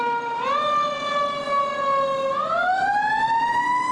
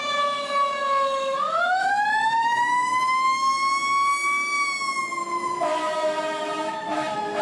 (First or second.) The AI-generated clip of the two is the second